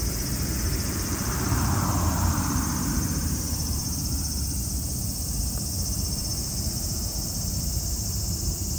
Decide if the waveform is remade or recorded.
remade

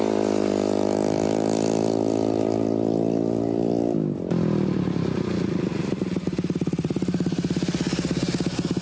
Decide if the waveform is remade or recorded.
recorded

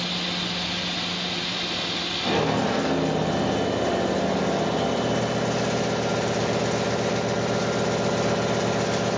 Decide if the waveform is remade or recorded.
recorded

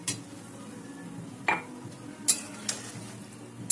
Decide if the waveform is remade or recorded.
recorded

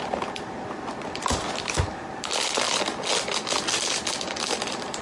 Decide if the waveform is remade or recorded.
recorded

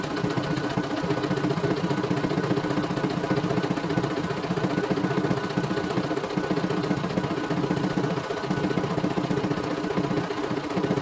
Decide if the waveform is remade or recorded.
recorded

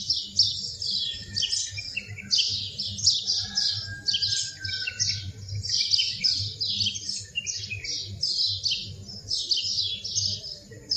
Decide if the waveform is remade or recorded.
recorded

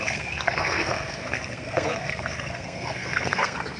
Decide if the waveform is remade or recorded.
remade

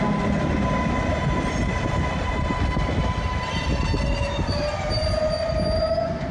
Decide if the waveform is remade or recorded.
recorded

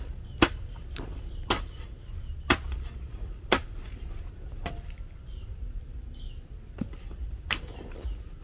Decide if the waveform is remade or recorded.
remade